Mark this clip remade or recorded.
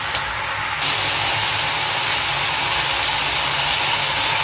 recorded